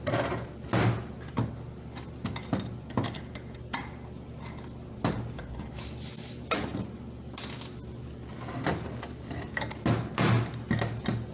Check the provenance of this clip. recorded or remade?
recorded